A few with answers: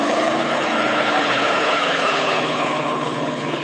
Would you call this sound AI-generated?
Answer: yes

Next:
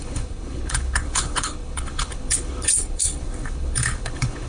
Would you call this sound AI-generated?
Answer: yes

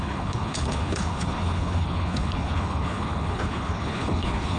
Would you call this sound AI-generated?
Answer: yes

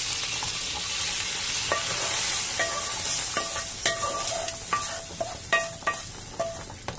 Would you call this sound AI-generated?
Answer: no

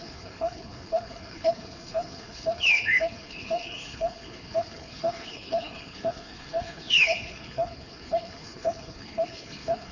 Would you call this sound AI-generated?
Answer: yes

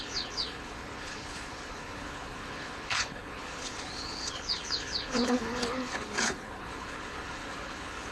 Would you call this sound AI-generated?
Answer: yes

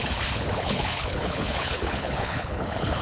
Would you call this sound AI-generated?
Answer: yes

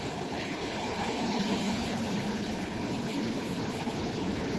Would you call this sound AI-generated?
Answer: yes